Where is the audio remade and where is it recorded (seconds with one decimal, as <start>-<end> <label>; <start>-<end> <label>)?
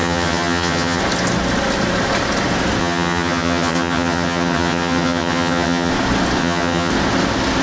0.0-1.0 remade; 1.0-2.8 recorded; 2.8-5.9 remade; 5.9-6.4 recorded; 6.4-6.9 remade; 6.9-7.6 recorded